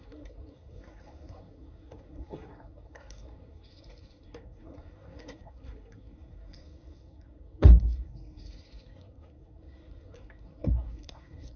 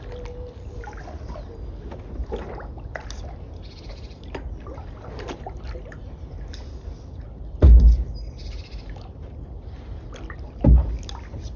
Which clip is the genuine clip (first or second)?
second